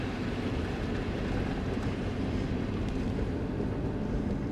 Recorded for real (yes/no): yes